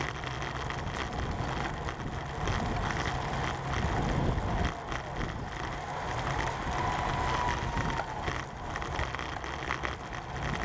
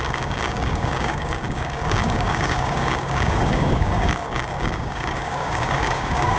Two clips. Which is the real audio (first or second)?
first